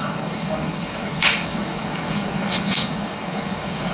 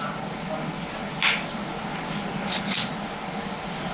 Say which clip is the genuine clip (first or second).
second